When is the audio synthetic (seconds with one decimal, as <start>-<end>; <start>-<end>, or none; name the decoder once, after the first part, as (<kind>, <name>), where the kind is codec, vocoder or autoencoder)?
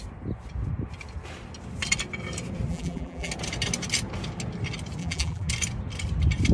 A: 2.7-3.3 (vocoder, BigVGAN v2); 5.0-5.5